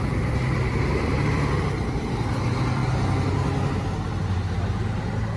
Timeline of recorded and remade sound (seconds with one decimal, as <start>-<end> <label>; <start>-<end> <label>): 0.0-2.8 remade; 2.8-5.0 recorded; 5.0-5.4 remade